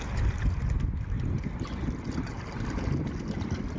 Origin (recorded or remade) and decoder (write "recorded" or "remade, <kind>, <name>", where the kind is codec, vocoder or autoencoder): recorded